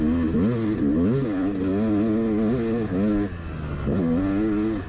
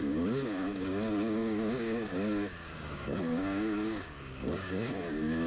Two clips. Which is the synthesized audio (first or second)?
second